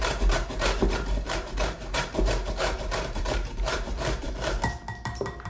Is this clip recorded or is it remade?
remade